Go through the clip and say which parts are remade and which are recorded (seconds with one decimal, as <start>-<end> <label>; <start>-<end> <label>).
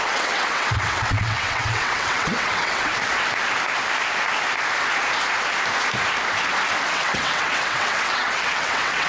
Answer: 0.0-2.9 remade; 2.9-6.9 recorded; 6.9-9.1 remade